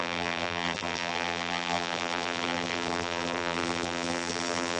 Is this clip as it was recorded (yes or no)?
no